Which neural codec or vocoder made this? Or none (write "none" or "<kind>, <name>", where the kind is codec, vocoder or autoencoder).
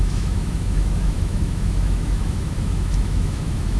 autoencoder, DAC-VAE